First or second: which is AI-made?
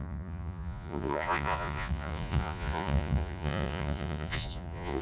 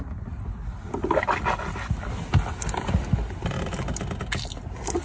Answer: first